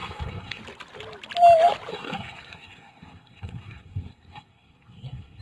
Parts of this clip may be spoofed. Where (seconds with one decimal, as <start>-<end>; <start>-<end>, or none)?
0.0-0.6; 1.9-5.4